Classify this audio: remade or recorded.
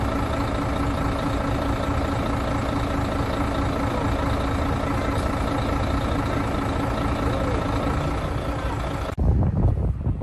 recorded